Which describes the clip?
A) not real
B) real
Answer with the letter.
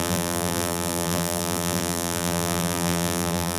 A